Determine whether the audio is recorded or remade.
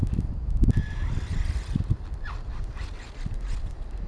recorded